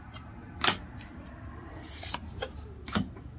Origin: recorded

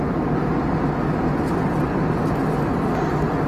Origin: recorded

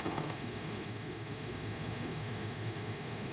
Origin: remade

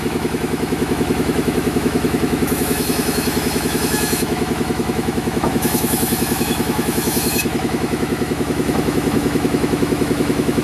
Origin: remade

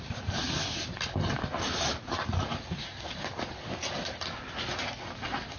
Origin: recorded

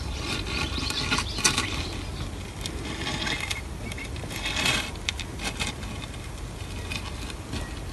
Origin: recorded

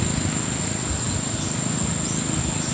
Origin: recorded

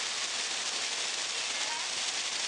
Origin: recorded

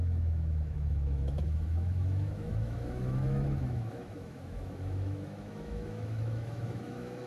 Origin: remade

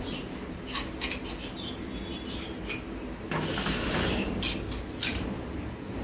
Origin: recorded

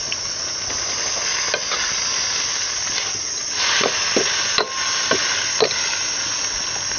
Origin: recorded